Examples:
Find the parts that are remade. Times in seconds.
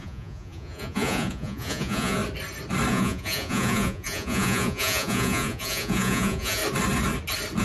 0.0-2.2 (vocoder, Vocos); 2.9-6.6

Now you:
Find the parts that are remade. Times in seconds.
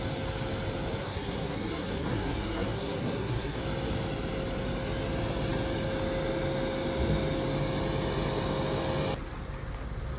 1.0-3.6 (codec, SNAC)